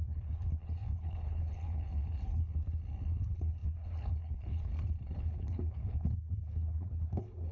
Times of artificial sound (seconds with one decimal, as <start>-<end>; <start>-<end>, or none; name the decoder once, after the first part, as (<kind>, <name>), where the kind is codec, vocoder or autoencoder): 0.0-2.4 (codec, HILCodec); 3.2-4.7; 5.2-7.5